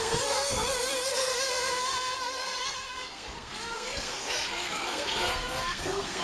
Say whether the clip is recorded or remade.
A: remade